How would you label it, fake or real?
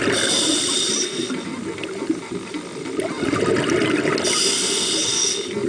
real